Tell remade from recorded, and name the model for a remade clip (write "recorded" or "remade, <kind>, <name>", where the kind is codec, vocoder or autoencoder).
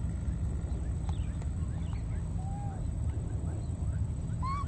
recorded